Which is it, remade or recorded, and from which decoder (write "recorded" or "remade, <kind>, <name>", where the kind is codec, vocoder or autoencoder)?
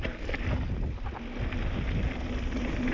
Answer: recorded